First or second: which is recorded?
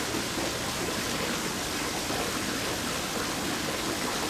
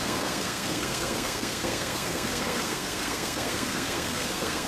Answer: first